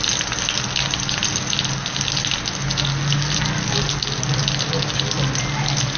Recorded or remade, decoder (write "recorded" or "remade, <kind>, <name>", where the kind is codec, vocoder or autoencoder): recorded